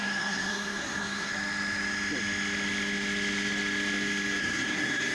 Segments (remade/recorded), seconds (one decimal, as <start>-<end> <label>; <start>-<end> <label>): 0.0-1.3 remade; 1.3-4.4 recorded; 4.4-5.1 remade